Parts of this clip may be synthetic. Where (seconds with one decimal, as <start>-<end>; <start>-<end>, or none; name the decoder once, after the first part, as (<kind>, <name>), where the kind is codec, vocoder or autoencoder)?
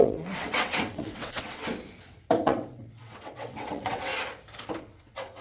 0.0-1.7 (vocoder, WaveNeXt); 2.4-4.1; 4.8-5.4